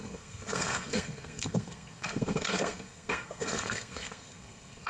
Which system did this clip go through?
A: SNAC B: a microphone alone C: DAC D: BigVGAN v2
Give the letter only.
A